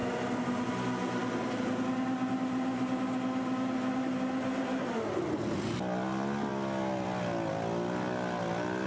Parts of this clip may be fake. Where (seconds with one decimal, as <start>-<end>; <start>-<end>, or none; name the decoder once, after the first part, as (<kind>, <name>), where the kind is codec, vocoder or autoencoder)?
none